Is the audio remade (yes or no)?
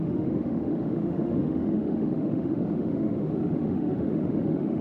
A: yes